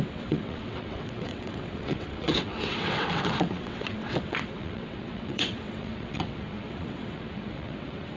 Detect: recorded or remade remade